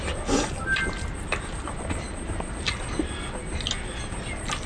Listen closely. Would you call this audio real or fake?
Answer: real